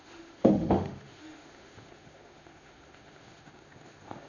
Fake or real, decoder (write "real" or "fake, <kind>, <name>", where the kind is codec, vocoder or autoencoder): fake, autoencoder, DAC-VAE